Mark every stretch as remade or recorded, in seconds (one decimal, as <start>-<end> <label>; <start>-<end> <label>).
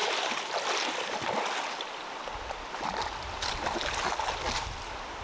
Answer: 0.0-5.2 recorded